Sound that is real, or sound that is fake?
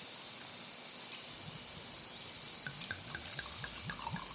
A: real